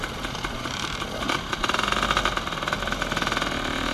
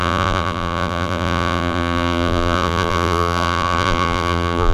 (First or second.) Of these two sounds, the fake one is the second